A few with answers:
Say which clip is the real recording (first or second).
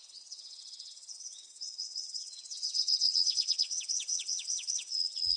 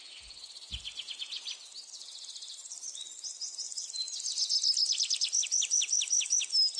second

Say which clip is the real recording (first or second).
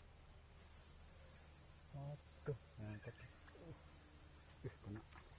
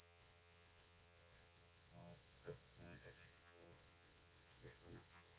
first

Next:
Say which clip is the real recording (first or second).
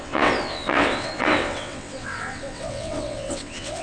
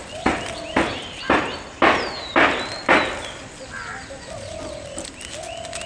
second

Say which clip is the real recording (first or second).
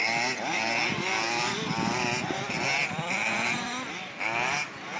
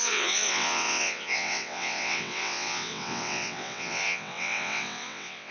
first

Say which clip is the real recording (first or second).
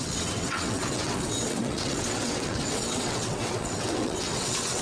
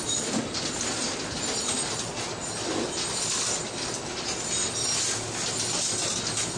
second